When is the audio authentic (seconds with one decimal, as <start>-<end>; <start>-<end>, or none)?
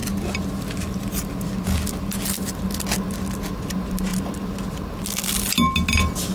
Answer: 0.0-6.3